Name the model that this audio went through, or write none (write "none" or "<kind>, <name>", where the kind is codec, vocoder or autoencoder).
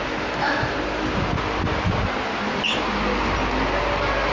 none